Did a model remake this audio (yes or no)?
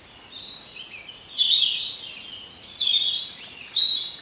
yes